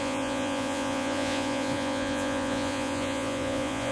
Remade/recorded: remade